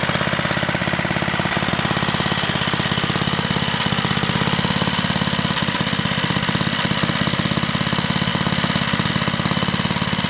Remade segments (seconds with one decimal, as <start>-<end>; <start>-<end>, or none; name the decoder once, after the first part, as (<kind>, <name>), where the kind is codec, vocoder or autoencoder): none